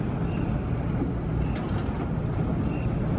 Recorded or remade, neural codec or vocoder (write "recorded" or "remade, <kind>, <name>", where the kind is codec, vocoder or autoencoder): recorded